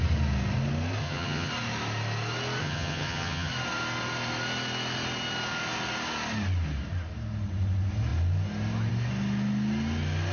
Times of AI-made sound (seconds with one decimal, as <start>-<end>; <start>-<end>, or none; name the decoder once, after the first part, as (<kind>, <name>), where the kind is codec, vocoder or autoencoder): 1.0-1.5 (vocoder, HiFi-GAN); 2.6-3.5